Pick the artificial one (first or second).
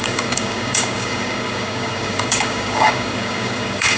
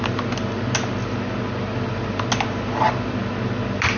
first